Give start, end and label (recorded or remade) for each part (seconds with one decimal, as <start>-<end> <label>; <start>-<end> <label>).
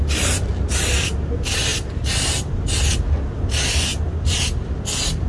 0.0-1.7 recorded; 1.7-2.3 remade; 2.3-5.3 recorded